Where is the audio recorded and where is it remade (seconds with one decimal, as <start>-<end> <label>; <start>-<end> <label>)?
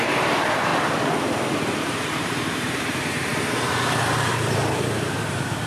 0.0-0.7 remade; 0.7-2.1 recorded; 2.1-5.7 remade